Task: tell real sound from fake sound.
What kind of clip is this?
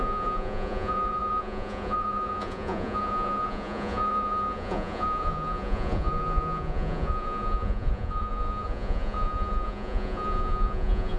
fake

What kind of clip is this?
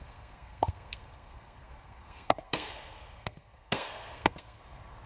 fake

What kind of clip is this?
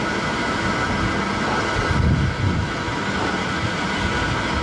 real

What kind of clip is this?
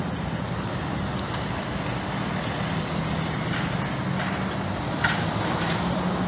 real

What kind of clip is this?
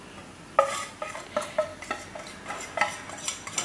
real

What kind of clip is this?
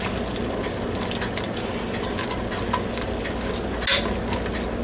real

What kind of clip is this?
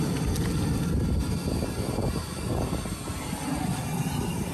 real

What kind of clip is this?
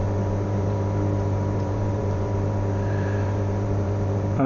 fake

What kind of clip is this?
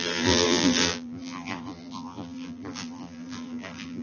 fake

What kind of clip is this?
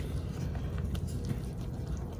real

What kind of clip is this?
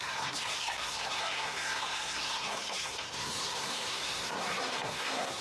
fake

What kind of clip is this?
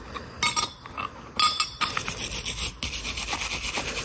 real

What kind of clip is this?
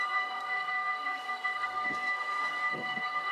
fake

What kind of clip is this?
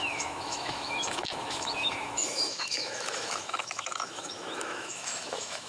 fake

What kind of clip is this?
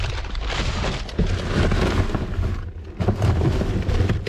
real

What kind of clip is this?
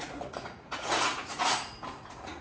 fake